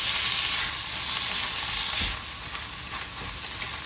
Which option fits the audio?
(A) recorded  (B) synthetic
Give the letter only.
A